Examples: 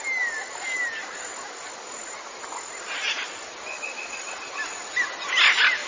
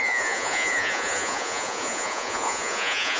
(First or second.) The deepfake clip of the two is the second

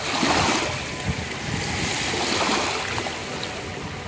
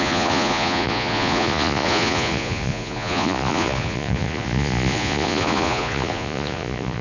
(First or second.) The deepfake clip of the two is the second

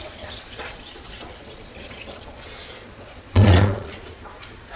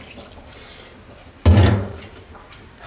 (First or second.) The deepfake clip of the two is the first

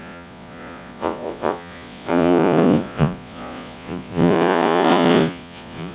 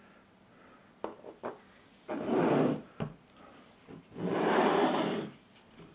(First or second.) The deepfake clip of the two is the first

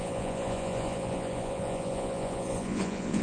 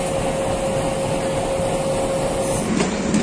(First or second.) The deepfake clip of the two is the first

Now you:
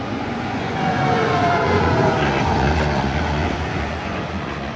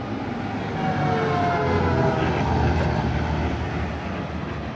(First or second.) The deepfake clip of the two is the first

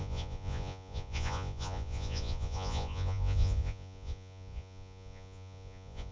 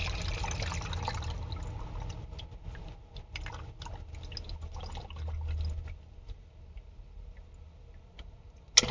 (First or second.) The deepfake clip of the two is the first